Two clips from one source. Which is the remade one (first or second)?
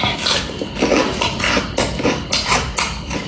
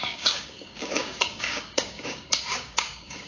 second